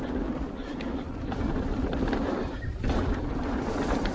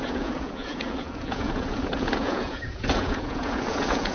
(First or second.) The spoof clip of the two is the second